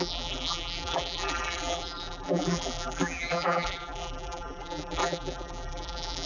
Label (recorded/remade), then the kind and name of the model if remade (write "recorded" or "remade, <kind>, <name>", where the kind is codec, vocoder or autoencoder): remade, vocoder, BigVGAN v2